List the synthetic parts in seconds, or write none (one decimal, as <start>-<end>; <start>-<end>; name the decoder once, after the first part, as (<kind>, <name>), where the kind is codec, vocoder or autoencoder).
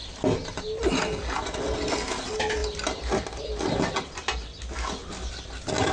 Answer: 0.0-0.9 (vocoder, BigVGAN v2); 5.0-5.5